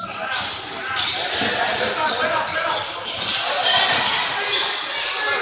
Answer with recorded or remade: recorded